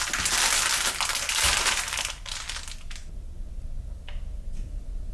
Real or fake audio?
real